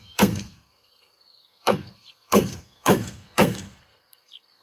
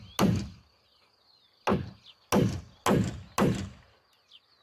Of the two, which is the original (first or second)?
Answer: second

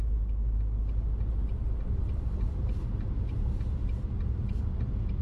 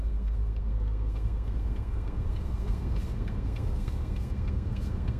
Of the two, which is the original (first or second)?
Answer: first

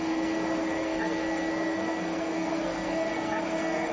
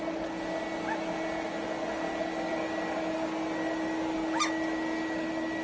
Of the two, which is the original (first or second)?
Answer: second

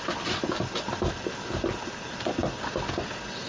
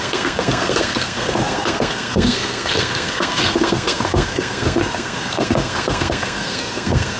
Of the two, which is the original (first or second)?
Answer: first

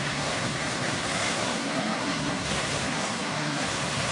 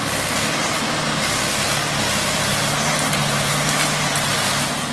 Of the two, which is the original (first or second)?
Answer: second